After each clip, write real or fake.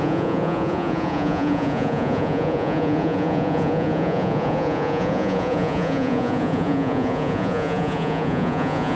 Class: fake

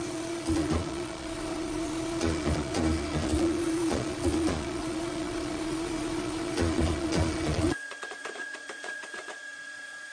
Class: fake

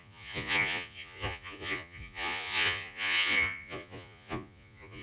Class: fake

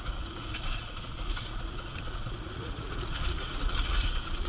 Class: fake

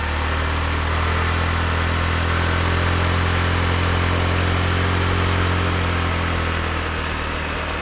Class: real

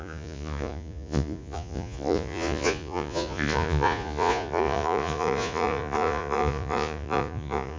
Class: fake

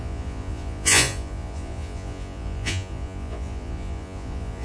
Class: fake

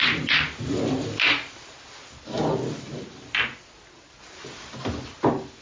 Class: real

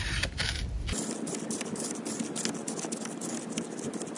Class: real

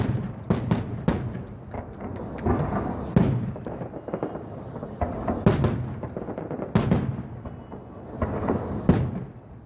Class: real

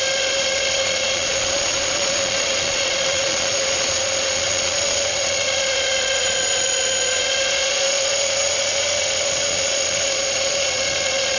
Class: fake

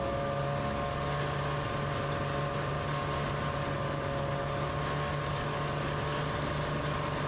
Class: real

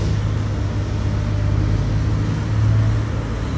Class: real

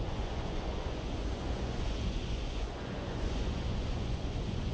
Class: fake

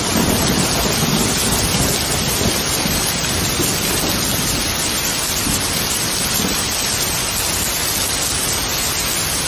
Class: real